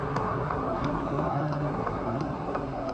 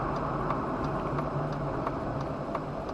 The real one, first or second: second